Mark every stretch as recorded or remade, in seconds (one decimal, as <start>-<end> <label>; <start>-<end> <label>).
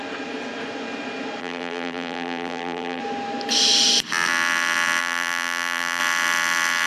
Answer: 0.0-1.4 recorded; 1.4-3.0 remade; 3.0-5.0 recorded; 5.0-6.0 remade; 6.0-6.9 recorded